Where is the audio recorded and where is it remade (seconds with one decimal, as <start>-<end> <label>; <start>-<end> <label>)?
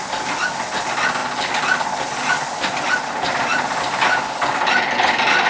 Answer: 0.0-5.5 recorded